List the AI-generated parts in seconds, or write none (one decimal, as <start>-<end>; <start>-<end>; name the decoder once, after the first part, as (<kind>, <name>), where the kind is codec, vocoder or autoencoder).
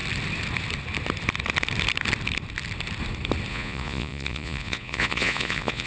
3.5-5.9 (vocoder, Vocos)